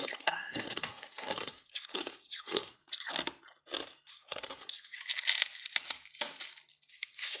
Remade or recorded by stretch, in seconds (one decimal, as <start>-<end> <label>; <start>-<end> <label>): 0.0-2.8 remade; 2.8-4.1 recorded; 4.1-5.0 remade; 5.0-6.9 recorded; 6.9-7.4 remade